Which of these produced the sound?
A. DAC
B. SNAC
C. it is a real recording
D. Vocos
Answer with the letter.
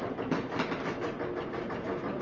C